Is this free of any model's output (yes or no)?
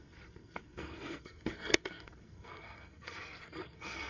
no